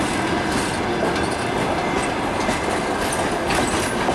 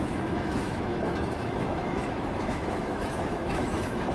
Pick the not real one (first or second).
second